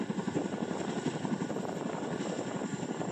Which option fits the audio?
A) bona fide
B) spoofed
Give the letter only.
A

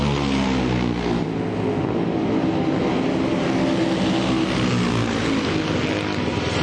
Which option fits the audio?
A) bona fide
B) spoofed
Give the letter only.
A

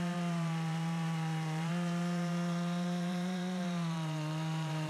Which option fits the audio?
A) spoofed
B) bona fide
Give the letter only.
A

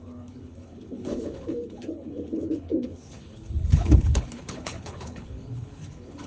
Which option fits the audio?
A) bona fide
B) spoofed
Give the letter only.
B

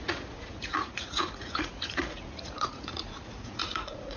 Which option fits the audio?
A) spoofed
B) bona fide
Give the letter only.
A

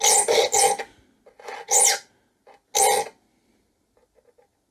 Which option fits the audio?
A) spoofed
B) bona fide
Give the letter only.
B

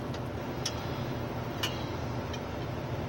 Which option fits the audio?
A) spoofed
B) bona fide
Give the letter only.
B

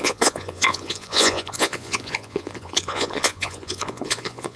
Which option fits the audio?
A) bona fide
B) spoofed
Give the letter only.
B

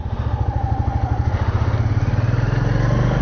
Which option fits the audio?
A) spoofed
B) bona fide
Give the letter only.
B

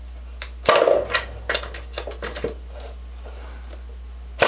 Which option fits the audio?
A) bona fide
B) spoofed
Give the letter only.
A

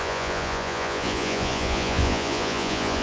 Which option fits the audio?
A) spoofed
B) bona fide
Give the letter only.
A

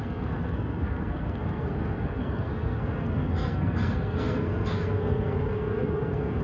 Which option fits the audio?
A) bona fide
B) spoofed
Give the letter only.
B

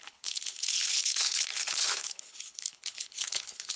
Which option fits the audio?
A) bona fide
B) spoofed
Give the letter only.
B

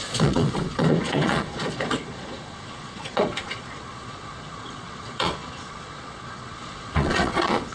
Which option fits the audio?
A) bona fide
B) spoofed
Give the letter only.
B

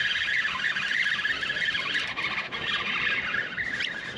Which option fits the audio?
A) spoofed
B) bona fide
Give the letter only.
B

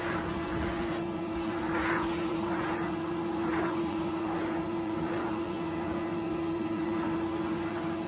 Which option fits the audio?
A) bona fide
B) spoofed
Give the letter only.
B